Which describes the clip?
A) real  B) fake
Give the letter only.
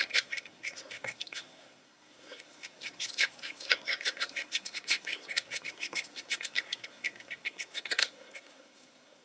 B